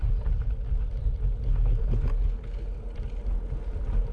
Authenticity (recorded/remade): recorded